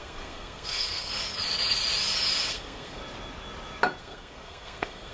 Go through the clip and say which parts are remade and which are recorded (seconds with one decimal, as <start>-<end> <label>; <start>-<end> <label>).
0.0-1.1 remade; 1.1-2.5 recorded; 2.5-3.0 remade; 3.0-4.0 recorded; 4.0-5.1 remade